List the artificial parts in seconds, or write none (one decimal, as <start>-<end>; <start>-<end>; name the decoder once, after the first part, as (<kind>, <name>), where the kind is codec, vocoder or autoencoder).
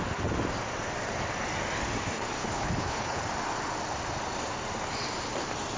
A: 2.4-3.2 (codec, HILCodec)